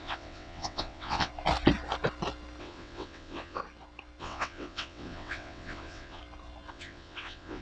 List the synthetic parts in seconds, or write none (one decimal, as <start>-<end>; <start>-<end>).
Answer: 0.0-1.3; 2.6-3.6; 4.2-6.2; 6.7-7.6